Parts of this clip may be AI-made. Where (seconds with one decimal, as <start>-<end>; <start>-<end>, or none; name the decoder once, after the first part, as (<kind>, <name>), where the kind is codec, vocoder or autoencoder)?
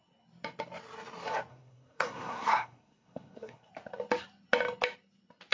1.5-3.7 (codec, SNAC)